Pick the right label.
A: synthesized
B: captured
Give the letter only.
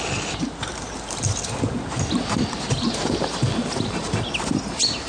B